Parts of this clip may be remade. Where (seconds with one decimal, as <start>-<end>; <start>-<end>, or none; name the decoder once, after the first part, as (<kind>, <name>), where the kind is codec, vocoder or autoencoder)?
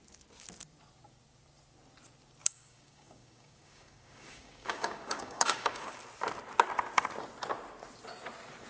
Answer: 2.4-6.0 (codec, DAC)